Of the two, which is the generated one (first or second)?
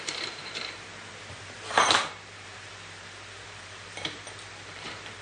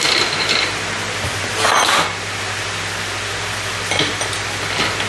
first